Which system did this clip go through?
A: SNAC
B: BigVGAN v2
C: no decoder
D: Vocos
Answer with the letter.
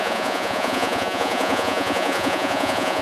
D